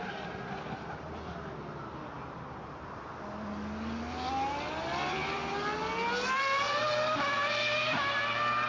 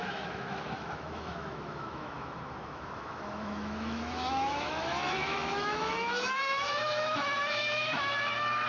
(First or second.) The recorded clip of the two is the first